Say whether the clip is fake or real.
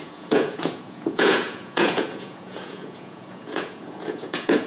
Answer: fake